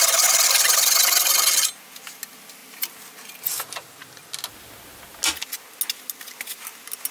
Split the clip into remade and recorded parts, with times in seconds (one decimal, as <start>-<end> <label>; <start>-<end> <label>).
0.0-7.1 recorded